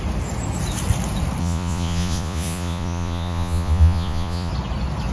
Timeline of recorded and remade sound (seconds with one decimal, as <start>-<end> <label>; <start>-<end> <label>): 0.0-1.4 recorded; 1.4-4.5 remade; 4.5-5.1 recorded